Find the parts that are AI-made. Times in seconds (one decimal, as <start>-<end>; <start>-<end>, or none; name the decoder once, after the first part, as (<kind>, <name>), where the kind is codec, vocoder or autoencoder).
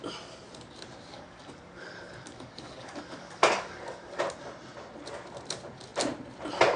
1.1-4.2 (codec, DAC)